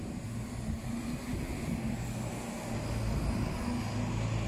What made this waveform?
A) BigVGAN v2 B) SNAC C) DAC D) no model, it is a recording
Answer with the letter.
D